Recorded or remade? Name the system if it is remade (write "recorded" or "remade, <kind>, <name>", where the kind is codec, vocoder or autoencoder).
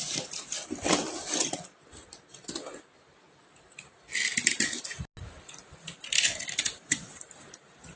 recorded